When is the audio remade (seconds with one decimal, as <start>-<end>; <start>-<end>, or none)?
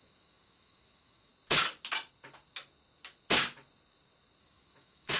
0.0-1.3; 4.4-5.2